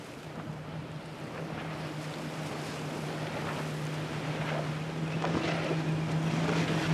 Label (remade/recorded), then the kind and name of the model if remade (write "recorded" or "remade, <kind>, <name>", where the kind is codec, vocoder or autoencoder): recorded